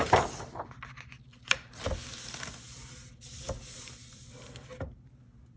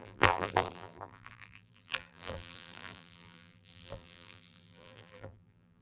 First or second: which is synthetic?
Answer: second